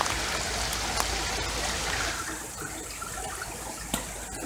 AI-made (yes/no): no